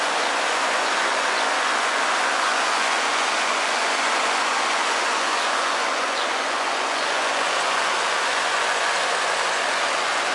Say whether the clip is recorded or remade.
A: remade